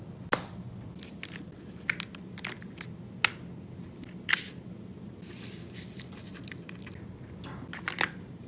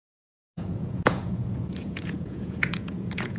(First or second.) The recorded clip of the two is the first